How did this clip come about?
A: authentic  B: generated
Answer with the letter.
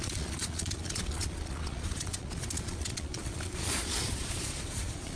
B